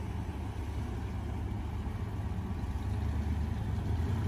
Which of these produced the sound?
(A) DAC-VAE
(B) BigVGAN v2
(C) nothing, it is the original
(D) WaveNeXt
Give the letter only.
C